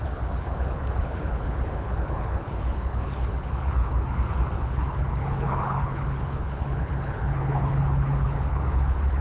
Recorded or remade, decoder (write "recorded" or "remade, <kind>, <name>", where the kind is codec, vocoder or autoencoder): remade, codec, HILCodec